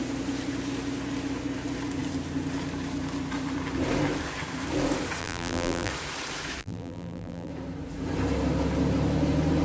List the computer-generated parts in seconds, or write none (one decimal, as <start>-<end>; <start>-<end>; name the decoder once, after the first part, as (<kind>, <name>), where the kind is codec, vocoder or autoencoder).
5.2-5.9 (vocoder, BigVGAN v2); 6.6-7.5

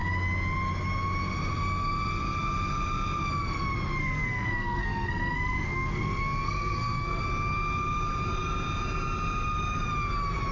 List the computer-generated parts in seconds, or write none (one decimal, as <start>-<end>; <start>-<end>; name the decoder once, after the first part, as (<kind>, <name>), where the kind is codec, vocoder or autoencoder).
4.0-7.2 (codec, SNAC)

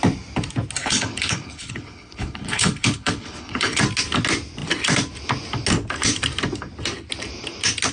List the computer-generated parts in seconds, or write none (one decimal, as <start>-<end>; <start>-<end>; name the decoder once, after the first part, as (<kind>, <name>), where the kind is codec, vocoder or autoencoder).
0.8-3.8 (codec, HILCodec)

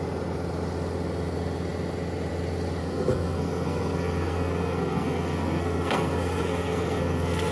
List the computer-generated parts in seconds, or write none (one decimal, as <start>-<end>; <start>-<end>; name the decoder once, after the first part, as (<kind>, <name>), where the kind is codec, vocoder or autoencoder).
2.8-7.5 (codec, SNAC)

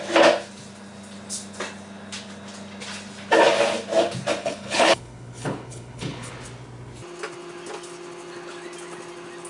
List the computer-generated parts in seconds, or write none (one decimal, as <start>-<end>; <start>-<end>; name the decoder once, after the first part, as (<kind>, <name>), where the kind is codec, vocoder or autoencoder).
4.4-6.3 (codec, HILCodec)